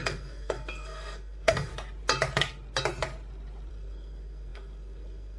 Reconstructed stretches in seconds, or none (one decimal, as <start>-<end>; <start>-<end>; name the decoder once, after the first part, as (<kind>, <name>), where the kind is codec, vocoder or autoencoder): 0.0-1.7 (codec, SNAC); 3.7-5.4